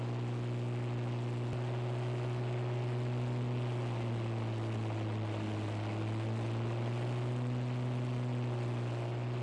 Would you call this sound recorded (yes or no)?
yes